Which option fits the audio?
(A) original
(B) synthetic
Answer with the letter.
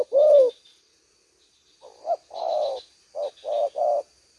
A